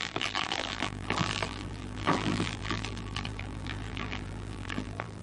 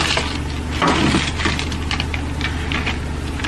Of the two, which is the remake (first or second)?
first